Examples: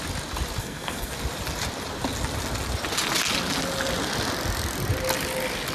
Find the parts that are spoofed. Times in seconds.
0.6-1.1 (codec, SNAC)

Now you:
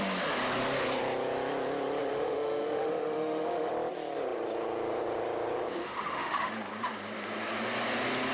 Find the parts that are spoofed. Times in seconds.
2.0-3.7 (autoencoder, DAC-VAE); 5.8-6.5

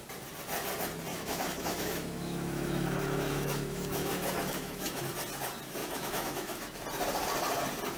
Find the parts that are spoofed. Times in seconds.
1.1-5.0 (autoencoder, DAC-VAE); 5.8-6.8

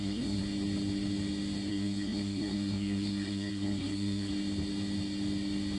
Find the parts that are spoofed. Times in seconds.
0.0-0.4 (codec, SNAC); 1.7-4.3

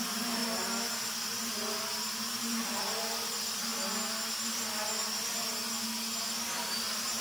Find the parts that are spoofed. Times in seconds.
0.0-0.4 (vocoder, BigVGAN v2); 0.9-3.7; 6.6-7.2

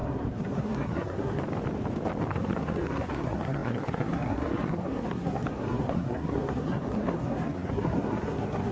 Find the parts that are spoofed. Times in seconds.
0.0-1.4 (codec, SNAC); 2.3-8.7

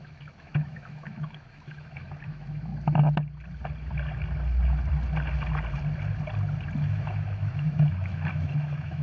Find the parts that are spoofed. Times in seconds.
0.0-2.7 (autoencoder, DAC-VAE); 6.8-9.0